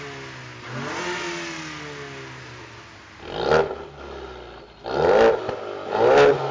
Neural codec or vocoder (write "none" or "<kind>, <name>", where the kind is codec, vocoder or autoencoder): none